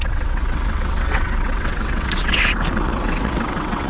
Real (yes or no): no